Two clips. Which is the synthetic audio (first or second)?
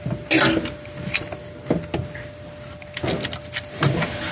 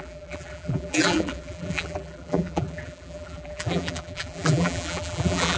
second